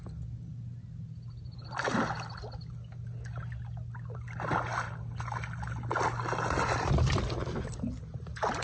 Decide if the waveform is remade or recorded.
recorded